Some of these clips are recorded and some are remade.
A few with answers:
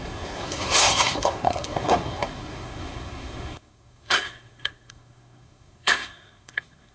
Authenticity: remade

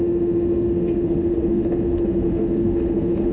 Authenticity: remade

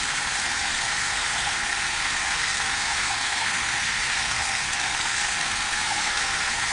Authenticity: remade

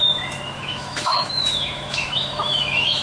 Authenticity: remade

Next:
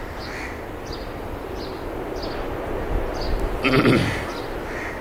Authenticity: recorded